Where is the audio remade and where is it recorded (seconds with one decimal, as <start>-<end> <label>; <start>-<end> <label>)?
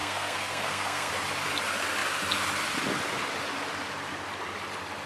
0.0-1.1 remade; 1.1-5.1 recorded